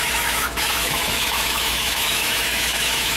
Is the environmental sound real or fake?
fake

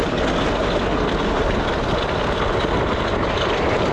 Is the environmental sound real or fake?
real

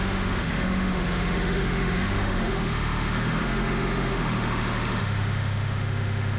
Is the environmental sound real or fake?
fake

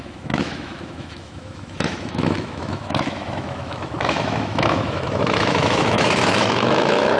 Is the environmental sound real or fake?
fake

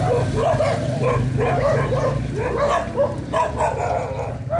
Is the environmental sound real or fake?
real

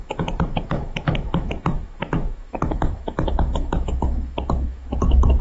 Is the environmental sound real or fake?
fake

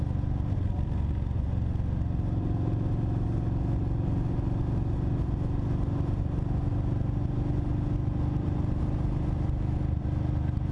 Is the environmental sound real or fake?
real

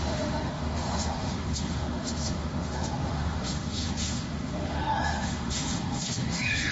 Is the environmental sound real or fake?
fake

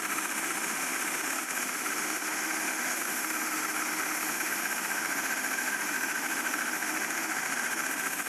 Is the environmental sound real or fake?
fake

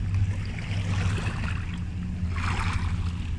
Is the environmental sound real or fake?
real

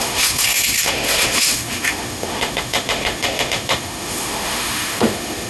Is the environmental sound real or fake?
fake